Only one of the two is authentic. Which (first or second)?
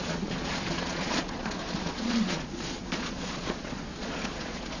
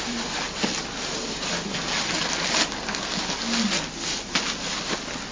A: second